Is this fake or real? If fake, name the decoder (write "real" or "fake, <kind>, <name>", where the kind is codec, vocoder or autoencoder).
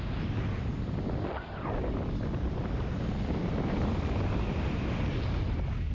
real